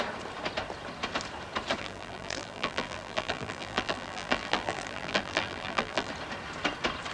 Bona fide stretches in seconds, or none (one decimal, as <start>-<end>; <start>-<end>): 0.0-1.8; 6.1-7.1